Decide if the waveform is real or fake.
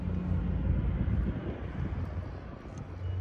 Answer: real